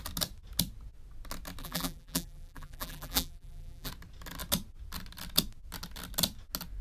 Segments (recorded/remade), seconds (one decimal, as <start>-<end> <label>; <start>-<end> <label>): 0.0-1.6 recorded; 1.6-3.9 remade; 3.9-6.8 recorded